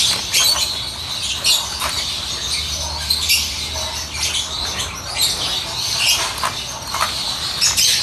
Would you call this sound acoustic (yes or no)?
yes